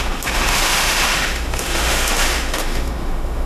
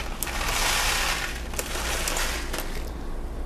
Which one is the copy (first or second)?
first